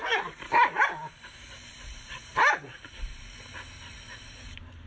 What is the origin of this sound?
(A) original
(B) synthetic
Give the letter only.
B